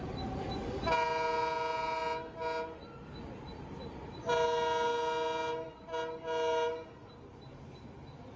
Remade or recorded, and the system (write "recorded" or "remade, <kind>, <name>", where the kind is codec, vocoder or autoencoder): recorded